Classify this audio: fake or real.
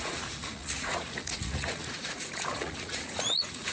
fake